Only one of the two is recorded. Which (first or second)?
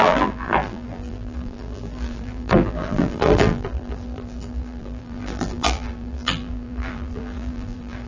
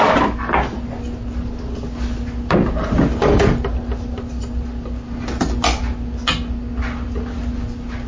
second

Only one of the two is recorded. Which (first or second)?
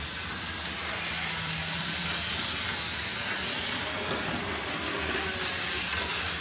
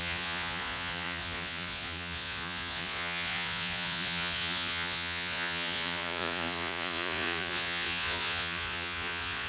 first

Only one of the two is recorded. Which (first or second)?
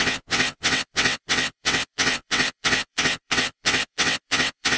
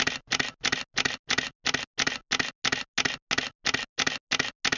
second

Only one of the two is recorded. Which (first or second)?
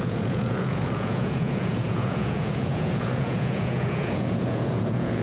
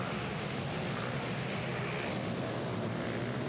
second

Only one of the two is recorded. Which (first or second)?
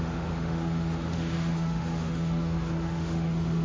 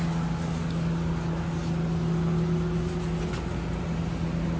second